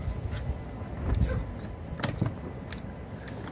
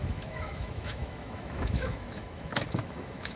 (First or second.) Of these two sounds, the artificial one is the second